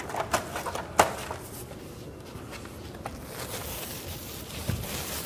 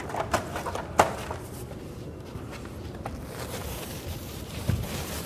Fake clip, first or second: second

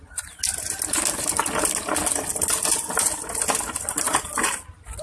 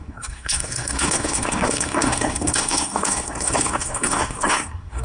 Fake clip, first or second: second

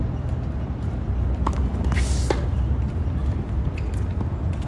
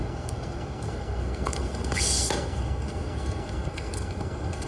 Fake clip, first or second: second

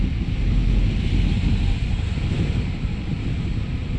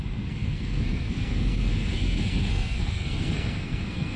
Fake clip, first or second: second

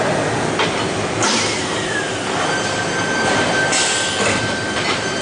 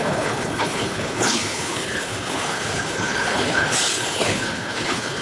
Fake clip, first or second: second